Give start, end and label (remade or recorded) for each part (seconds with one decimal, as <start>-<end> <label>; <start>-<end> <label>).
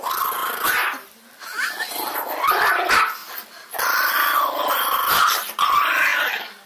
0.0-0.4 recorded; 0.4-1.1 remade; 1.1-6.7 recorded